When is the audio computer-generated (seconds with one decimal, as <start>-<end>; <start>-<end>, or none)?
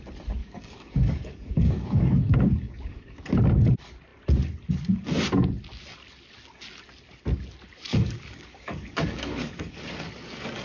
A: 0.4-3.4; 7.9-9.8